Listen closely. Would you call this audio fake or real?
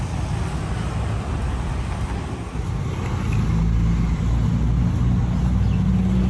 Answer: real